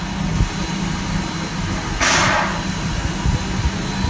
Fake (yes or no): no